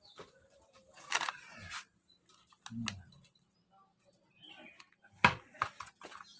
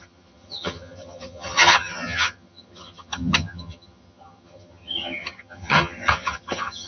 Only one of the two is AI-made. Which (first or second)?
second